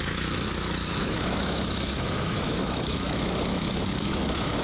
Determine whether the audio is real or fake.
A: fake